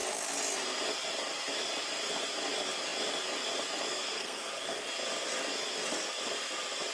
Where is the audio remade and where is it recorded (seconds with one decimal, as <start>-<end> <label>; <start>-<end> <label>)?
0.0-3.9 recorded; 3.9-4.5 remade; 4.5-6.9 recorded